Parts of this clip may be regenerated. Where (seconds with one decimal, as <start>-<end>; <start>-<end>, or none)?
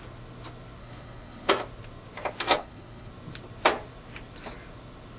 0.8-1.5; 2.6-3.1